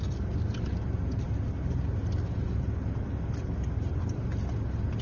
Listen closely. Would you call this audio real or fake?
real